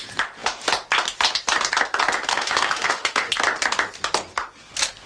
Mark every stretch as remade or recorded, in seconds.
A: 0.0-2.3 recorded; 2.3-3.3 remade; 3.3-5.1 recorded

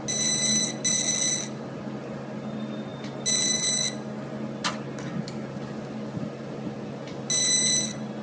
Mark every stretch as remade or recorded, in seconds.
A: 0.0-8.2 recorded

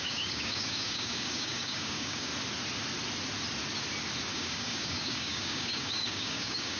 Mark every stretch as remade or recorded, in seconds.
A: 0.0-2.3 remade; 2.3-4.2 recorded; 4.2-6.8 remade

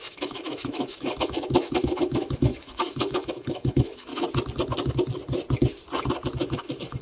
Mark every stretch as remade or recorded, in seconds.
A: 0.0-4.1 remade; 4.1-6.4 recorded; 6.4-7.0 remade